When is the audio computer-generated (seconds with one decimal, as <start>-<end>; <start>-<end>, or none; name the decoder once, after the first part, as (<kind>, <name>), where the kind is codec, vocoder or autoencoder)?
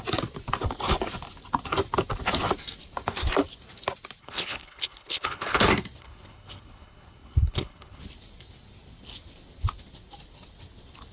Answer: 4.2-5.6 (codec, HILCodec); 6.0-8.0